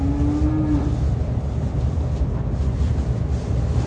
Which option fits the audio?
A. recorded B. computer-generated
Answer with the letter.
A